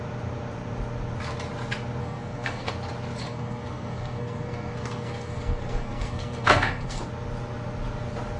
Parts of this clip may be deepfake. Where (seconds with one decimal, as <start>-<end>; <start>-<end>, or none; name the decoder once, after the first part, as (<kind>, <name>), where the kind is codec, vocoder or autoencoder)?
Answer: 2.0-2.7 (codec, SNAC); 3.2-7.0